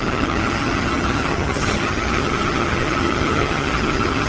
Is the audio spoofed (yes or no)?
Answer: yes